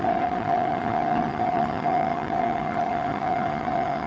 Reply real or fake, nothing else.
fake